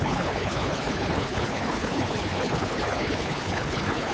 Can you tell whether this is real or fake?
fake